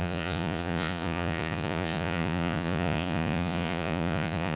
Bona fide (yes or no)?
no